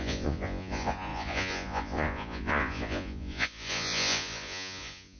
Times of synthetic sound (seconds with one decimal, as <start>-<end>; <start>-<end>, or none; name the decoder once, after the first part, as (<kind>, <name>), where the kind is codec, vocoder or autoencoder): 0.0-5.2 (vocoder, Vocos)